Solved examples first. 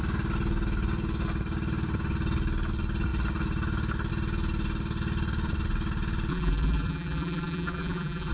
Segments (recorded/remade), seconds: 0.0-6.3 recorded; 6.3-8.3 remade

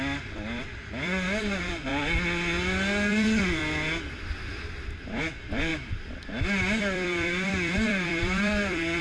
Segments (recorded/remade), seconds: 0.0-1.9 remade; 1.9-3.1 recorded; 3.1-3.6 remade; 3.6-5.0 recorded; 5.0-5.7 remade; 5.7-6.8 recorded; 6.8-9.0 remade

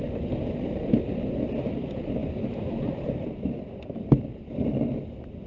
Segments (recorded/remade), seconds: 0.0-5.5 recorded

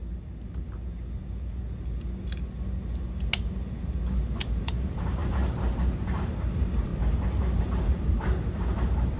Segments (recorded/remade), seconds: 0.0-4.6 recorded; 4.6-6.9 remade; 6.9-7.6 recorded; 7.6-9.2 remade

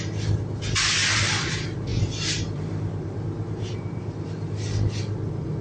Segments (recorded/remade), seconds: 0.0-1.0 recorded; 1.0-1.5 remade; 1.5-1.9 recorded; 1.9-4.6 remade; 4.6-5.6 recorded